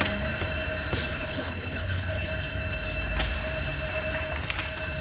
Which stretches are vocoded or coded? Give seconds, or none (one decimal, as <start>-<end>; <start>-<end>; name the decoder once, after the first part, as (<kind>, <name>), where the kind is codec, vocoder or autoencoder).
1.1-2.3 (codec, HILCodec)